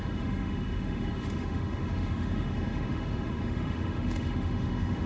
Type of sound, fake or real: fake